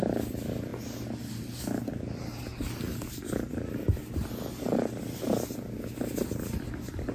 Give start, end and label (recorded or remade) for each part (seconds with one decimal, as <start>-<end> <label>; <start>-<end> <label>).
0.0-7.1 recorded